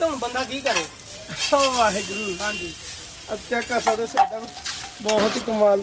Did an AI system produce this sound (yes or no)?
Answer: no